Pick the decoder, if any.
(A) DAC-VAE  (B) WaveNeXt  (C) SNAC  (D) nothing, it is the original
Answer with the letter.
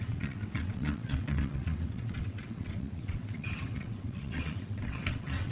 B